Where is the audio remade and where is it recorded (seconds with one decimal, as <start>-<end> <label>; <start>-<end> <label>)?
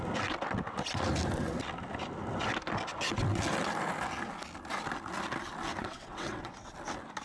0.0-5.8 recorded; 5.8-6.7 remade; 6.7-7.2 recorded